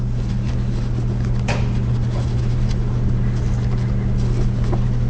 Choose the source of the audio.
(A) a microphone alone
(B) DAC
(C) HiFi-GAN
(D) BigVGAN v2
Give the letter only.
A